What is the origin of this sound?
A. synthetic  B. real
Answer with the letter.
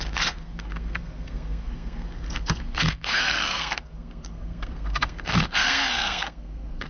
A